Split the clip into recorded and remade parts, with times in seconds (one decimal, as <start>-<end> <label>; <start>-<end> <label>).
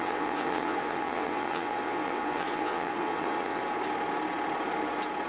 0.0-3.6 remade; 3.6-5.3 recorded